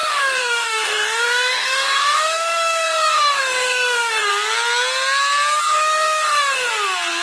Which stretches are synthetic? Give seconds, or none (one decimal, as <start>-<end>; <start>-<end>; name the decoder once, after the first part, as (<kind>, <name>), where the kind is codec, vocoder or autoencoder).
0.0-4.3 (codec, DAC); 5.6-6.7